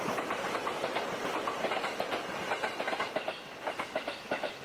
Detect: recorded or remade recorded